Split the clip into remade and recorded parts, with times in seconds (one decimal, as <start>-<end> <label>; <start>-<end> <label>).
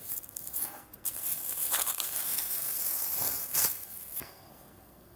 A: 0.0-5.2 remade